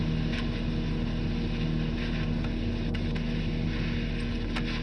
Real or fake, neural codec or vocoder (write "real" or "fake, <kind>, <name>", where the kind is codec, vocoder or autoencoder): real